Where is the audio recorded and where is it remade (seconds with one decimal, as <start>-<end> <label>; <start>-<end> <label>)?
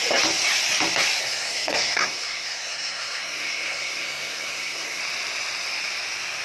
0.0-1.2 recorded; 1.2-5.0 remade; 5.0-6.4 recorded